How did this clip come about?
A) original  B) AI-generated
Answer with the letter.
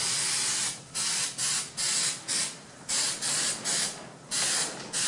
A